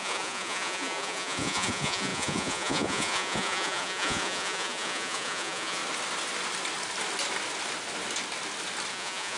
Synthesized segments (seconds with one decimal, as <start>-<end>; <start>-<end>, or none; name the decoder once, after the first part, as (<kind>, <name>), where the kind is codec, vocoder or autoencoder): 0.0-5.8 (vocoder, Vocos); 8.9-9.4